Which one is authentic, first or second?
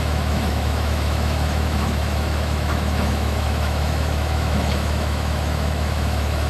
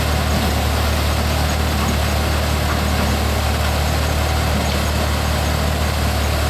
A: second